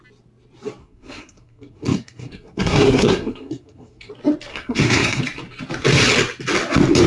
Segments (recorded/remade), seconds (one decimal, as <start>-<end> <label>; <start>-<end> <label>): 0.0-0.8 recorded; 0.8-4.1 remade; 4.1-4.5 recorded; 4.5-5.2 remade; 5.2-7.1 recorded